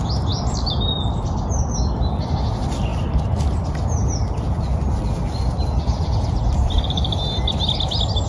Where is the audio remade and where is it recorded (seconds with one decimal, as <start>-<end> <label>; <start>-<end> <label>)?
0.0-8.3 recorded